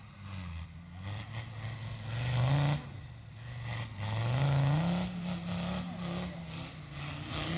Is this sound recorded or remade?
recorded